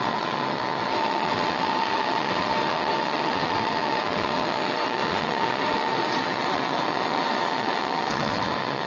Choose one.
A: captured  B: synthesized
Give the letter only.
B